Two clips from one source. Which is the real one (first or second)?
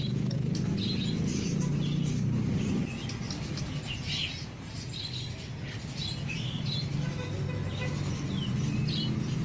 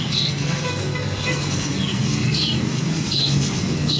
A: first